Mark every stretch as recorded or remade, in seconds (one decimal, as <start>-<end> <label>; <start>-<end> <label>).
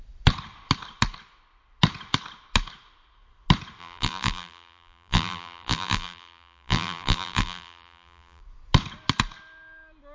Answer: 0.0-3.8 recorded; 3.8-8.4 remade; 8.4-10.1 recorded